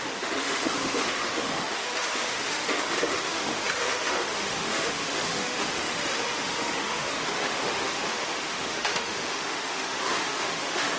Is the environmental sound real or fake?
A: fake